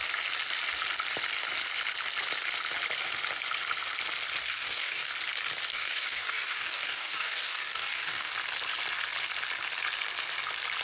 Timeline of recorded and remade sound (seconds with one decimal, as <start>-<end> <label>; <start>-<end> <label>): 0.0-4.4 recorded; 4.4-5.1 remade; 5.1-5.7 recorded; 5.7-8.3 remade; 8.3-10.8 recorded